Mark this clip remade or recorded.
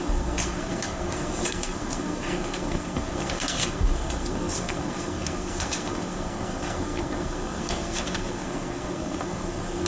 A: remade